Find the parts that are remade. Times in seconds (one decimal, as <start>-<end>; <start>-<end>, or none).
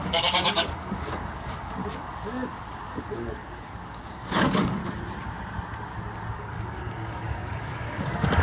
0.0-4.8; 6.3-8.4